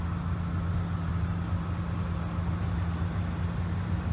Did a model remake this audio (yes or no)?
no